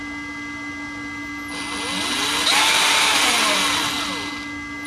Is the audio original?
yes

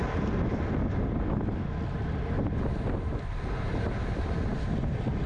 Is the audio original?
yes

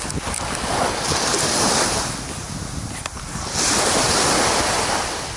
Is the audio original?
yes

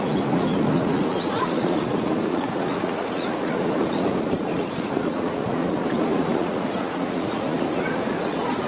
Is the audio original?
no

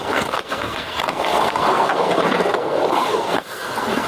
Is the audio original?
no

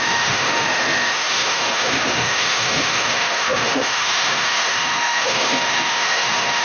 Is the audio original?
no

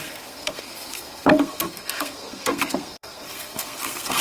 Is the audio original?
no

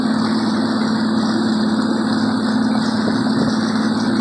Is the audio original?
yes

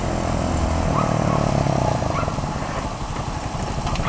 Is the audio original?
yes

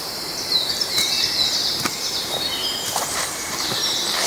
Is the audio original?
no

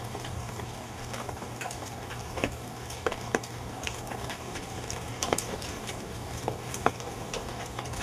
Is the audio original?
no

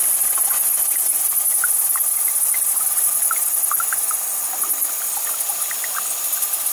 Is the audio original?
yes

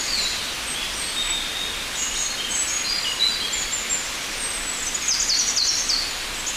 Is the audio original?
yes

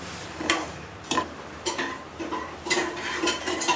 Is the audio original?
no